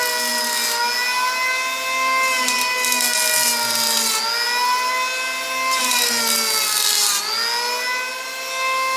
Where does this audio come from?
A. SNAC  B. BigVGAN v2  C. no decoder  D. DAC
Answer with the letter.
C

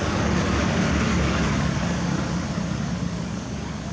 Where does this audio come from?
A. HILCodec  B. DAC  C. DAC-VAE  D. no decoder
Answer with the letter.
B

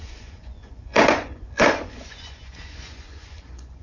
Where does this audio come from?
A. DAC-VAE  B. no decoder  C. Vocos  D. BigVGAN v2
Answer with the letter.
C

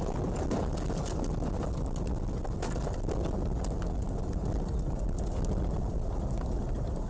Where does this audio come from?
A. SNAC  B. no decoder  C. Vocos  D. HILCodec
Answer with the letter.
B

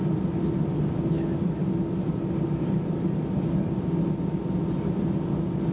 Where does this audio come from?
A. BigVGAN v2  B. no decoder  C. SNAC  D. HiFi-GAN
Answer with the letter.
B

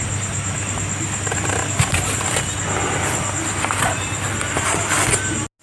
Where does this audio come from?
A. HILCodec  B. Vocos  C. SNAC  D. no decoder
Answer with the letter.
D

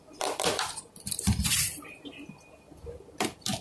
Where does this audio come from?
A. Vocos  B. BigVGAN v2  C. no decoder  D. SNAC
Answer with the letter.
B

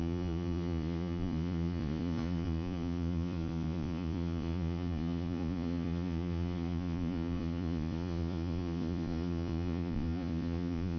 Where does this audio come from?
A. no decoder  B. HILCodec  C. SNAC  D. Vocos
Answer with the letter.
D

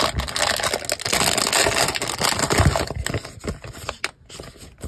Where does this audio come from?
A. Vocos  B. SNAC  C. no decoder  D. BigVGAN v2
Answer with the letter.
C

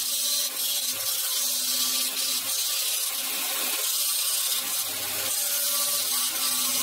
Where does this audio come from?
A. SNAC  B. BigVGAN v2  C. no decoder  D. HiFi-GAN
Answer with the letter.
C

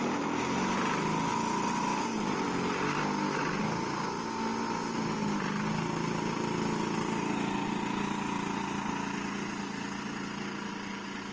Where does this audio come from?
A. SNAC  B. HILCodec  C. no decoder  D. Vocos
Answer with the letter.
C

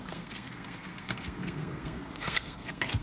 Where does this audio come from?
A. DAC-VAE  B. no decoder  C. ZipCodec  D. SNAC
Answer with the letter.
D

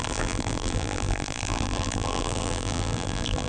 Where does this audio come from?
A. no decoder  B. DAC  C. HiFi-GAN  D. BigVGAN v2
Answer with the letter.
D